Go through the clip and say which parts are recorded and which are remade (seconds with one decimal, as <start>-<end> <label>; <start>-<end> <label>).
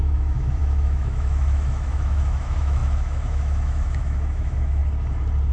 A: 0.0-4.8 remade; 4.8-5.5 recorded